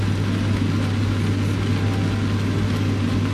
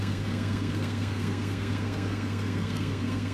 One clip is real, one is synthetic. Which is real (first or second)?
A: first